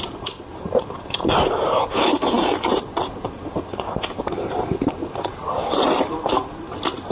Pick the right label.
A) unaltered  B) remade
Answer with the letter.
B